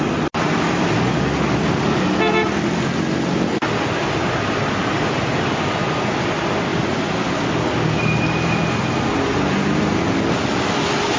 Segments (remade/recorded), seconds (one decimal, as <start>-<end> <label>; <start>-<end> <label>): 0.0-11.2 recorded